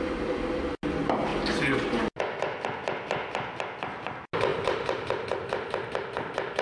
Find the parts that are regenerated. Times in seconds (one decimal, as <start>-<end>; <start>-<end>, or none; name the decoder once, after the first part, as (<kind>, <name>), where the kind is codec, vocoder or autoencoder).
none